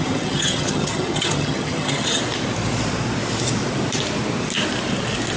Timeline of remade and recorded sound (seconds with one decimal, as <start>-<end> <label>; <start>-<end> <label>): 0.0-2.2 remade; 2.2-5.4 recorded

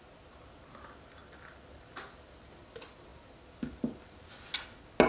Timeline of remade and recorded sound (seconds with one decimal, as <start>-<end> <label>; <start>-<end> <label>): 0.0-5.1 recorded

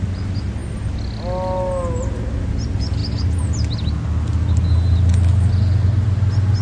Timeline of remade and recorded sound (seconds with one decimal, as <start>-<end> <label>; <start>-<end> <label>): 0.0-6.6 recorded

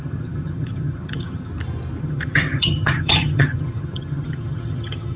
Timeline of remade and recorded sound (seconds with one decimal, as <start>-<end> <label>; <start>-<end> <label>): 0.0-1.5 remade; 1.5-2.0 recorded; 2.0-5.2 remade